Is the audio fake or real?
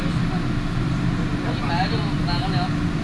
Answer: real